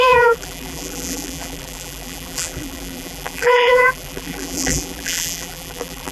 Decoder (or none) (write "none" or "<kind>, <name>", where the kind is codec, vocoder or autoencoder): vocoder, BigVGAN v2